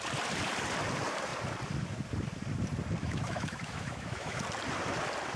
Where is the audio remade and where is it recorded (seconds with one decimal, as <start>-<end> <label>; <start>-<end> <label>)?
0.0-3.0 recorded; 3.0-4.4 remade; 4.4-5.4 recorded